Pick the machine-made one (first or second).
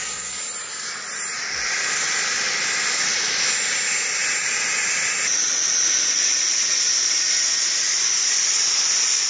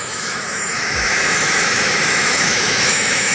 second